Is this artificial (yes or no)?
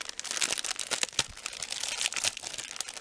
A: no